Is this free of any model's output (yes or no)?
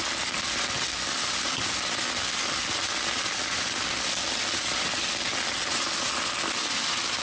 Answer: yes